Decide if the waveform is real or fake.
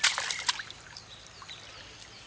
real